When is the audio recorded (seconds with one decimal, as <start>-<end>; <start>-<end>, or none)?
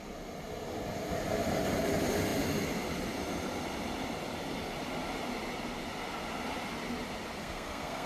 0.0-7.4